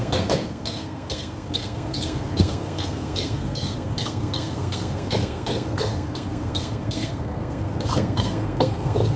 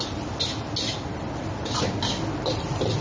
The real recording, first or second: second